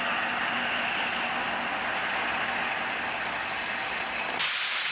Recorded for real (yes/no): yes